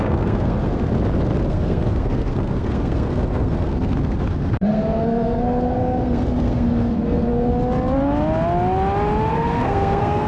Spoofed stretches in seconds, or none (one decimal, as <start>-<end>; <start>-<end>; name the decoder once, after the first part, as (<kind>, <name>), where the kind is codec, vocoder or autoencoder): 0.0-0.9 (codec, SNAC); 1.5-7.5; 9.3-10.3